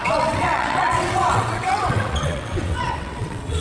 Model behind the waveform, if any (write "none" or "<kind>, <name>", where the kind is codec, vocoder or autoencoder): vocoder, WaveNeXt